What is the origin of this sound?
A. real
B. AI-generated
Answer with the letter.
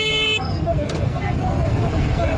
B